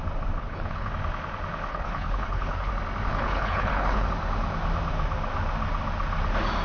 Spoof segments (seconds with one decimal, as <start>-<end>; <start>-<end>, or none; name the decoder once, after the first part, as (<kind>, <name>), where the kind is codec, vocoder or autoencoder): 0.4-0.9 (codec, HILCodec); 1.7-2.7; 3.1-4.1